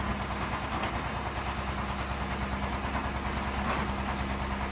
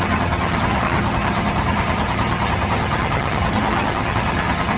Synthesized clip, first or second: second